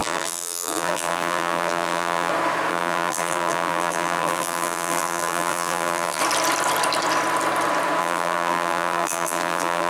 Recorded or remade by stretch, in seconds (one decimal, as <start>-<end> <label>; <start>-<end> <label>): 0.0-2.3 remade; 2.3-2.7 recorded; 2.7-6.2 remade; 6.2-8.0 recorded; 8.0-9.9 remade